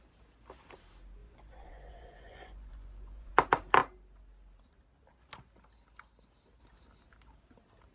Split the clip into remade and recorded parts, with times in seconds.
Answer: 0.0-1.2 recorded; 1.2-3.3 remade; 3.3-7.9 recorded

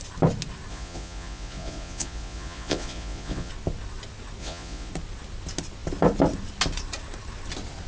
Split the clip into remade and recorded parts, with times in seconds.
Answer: 0.0-0.7 recorded; 0.7-3.5 remade; 3.5-4.4 recorded; 4.4-4.9 remade; 4.9-7.9 recorded

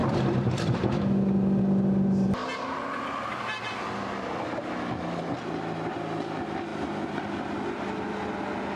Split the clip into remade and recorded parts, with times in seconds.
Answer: 0.0-1.0 remade; 1.0-8.8 recorded

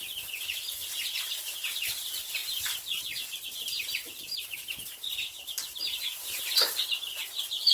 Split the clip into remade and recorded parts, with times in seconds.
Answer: 0.0-7.7 recorded